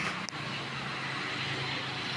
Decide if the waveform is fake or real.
real